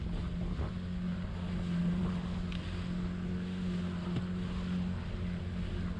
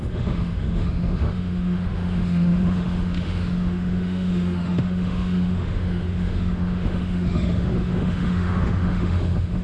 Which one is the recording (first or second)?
first